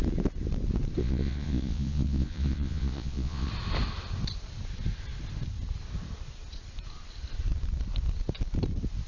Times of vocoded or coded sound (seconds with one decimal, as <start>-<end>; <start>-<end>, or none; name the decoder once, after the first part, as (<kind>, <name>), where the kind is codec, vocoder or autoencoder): 1.0-3.5 (vocoder, Vocos)